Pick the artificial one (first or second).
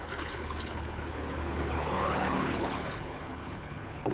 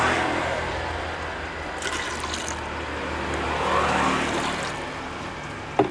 first